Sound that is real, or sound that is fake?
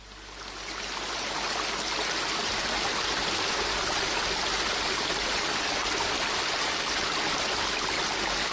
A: real